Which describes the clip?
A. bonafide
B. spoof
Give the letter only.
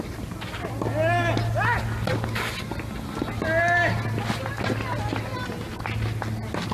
A